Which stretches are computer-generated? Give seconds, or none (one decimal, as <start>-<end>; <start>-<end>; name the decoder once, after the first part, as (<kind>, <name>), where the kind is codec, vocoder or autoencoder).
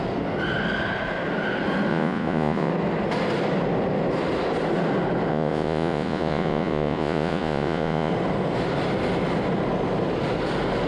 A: 1.9-2.7 (vocoder, Vocos); 5.3-8.1